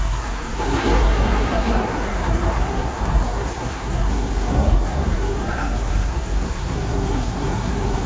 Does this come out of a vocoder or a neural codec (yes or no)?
yes